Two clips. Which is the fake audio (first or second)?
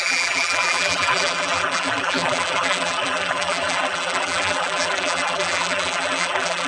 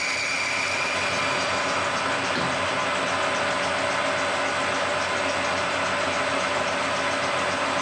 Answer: first